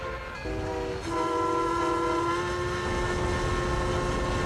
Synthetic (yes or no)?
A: no